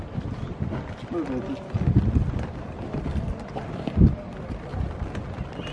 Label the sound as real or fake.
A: real